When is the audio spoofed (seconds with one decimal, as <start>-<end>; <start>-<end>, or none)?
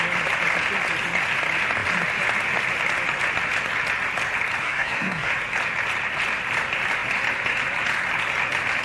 4.6-5.3